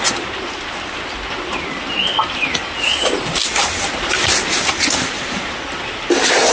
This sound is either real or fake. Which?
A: real